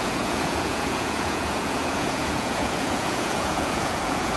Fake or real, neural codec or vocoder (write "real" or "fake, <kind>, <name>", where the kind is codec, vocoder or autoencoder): fake, vocoder, Vocos